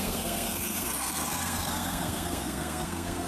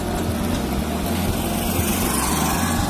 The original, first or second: second